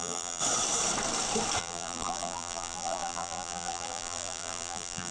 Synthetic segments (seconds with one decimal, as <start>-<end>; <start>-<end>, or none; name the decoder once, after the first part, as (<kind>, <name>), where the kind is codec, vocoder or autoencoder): 0.0-0.4 (vocoder, BigVGAN v2); 1.6-5.1